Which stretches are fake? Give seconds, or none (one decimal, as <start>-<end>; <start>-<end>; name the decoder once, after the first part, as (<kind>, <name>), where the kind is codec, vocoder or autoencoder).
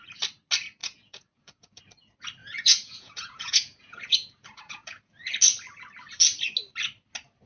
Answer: 0.8-1.8 (vocoder, Vocos); 2.4-5.1